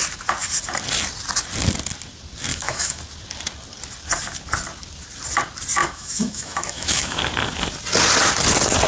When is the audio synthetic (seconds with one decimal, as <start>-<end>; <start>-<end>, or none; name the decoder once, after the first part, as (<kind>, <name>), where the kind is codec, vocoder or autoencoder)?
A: 2.5-3.0 (autoencoder, DAC-VAE); 5.8-7.2